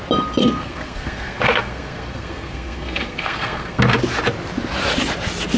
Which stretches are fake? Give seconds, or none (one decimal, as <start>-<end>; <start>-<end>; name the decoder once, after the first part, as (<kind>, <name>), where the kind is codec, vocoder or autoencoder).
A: 0.4-3.8 (codec, SNAC)

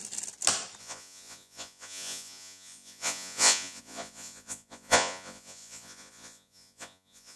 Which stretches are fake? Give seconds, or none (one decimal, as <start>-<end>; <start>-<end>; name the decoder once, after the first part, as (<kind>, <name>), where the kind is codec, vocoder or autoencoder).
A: 0.8-7.4 (vocoder, Vocos)

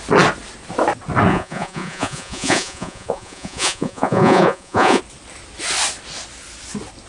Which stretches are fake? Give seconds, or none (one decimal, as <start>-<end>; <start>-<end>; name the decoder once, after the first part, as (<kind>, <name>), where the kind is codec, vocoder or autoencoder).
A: 1.3-5.0 (vocoder, Vocos)

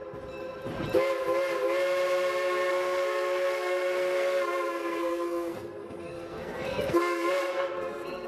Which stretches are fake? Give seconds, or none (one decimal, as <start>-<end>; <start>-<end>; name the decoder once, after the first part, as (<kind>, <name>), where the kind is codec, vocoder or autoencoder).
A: 2.7-8.3 (codec, SNAC)

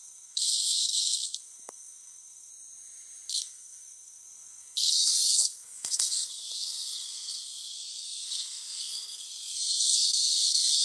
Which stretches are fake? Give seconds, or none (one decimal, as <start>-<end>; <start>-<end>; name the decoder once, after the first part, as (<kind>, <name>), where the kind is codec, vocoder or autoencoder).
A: 0.0-2.5 (codec, SNAC); 3.3-10.8

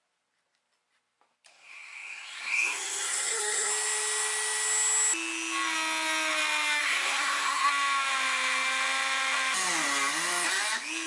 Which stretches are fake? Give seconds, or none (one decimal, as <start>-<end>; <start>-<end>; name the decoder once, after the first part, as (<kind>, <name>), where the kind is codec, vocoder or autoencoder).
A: 1.5-3.7 (codec, SNAC); 6.8-7.7